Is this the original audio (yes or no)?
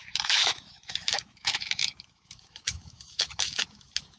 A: no